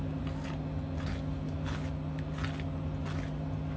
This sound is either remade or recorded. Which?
recorded